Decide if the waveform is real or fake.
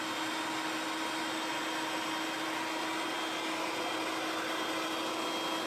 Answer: real